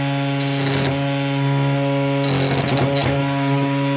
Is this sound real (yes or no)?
yes